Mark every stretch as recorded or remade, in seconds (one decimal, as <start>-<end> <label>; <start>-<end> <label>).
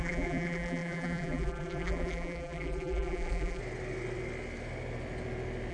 0.0-3.6 remade; 3.6-5.7 recorded